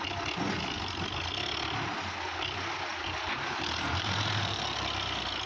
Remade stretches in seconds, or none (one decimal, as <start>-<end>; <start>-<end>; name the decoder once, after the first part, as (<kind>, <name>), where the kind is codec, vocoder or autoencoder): 2.9-4.9 (vocoder, BigVGAN v2)